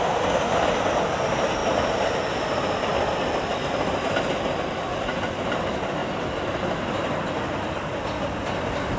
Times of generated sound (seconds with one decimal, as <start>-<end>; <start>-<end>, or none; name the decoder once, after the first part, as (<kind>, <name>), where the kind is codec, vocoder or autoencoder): none